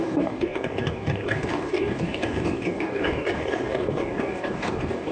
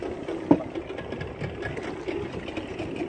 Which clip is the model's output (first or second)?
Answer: first